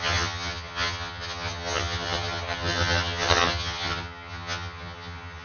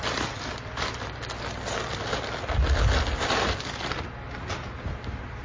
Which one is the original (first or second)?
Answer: second